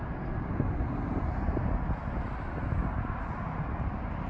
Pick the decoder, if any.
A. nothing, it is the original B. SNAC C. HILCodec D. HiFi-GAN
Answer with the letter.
A